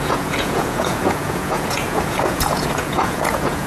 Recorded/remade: remade